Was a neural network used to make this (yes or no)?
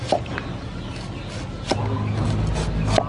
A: no